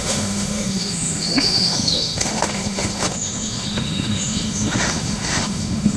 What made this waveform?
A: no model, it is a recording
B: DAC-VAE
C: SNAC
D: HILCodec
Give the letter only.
B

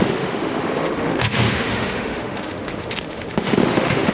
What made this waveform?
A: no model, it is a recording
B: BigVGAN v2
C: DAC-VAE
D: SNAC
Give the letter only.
C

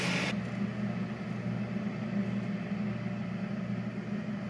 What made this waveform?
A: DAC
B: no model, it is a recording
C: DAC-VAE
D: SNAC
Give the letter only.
B